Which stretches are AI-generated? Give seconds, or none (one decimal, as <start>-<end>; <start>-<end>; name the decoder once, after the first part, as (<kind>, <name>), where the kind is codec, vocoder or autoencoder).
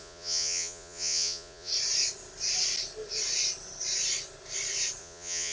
0.0-1.7 (vocoder, Vocos); 5.0-5.5